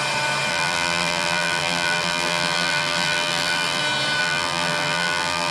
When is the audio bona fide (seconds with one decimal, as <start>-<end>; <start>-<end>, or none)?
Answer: 0.0-0.5; 3.8-4.2